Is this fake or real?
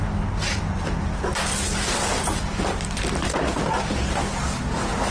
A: real